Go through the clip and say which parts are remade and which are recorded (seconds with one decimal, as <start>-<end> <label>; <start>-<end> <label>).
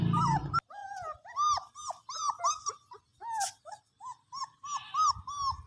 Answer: 0.0-5.7 recorded